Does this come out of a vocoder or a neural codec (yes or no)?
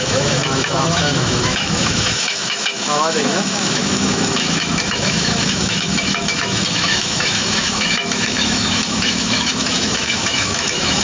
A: yes